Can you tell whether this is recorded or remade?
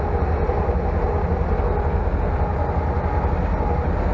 recorded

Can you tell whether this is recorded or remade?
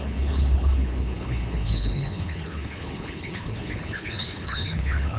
remade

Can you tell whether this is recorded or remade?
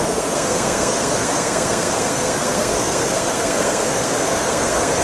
remade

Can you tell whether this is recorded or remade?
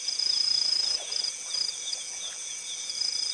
remade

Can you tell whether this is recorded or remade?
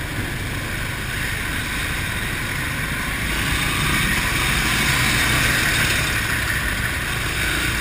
recorded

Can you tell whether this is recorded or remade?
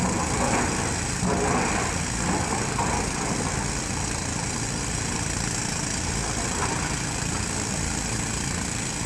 recorded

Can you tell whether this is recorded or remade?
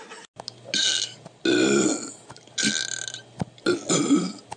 recorded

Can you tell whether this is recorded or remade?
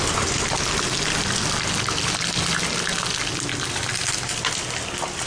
recorded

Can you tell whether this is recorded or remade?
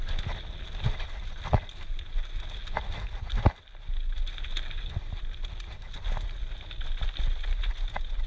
recorded